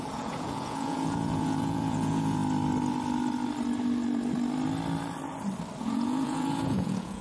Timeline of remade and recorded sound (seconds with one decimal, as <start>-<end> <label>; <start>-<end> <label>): 0.0-2.4 remade; 2.4-5.8 recorded; 5.8-7.2 remade